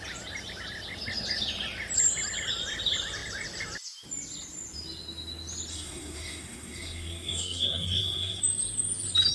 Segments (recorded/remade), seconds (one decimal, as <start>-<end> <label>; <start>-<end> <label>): 0.0-5.7 recorded; 5.7-8.4 remade; 8.4-9.3 recorded